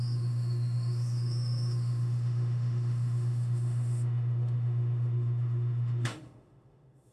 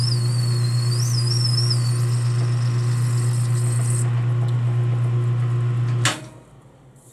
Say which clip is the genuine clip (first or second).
second